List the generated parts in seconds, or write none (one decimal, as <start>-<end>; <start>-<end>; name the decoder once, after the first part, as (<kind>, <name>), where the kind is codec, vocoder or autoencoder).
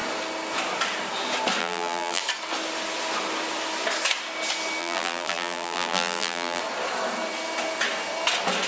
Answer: 1.6-2.2 (vocoder, BigVGAN v2); 4.8-6.6